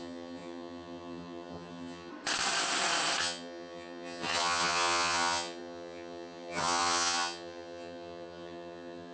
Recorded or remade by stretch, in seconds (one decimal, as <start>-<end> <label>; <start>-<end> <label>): 0.0-2.1 remade; 2.1-3.2 recorded; 3.2-9.1 remade